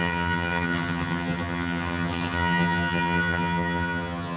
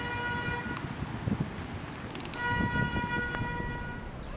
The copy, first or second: first